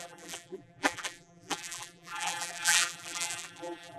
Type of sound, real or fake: fake